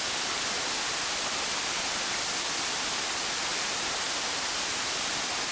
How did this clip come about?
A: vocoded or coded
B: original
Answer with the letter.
B